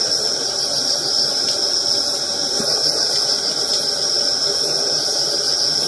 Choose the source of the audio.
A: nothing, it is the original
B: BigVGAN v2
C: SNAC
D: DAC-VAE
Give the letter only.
A